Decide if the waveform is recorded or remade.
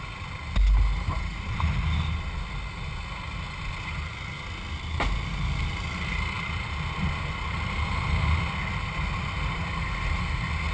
recorded